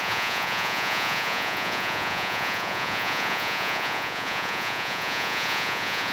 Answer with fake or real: fake